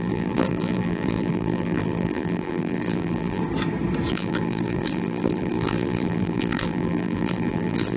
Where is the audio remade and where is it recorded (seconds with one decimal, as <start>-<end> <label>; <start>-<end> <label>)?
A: 0.0-3.4 remade; 3.4-4.1 recorded; 4.1-8.0 remade